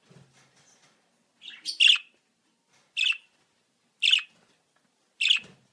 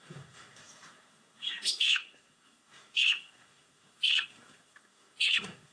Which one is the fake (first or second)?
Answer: second